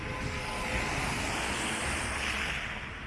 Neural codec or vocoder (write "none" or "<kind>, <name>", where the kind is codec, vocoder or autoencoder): none